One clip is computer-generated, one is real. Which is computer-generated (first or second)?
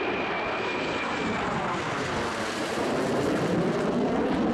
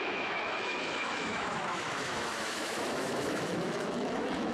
second